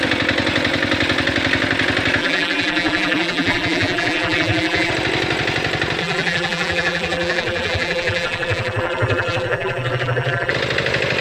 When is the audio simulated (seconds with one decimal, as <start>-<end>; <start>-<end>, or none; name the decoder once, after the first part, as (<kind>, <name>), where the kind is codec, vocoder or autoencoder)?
2.2-4.9 (vocoder, BigVGAN v2); 6.0-10.5